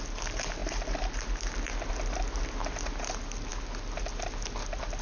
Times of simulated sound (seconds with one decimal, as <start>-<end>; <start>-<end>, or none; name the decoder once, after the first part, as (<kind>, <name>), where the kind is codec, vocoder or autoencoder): none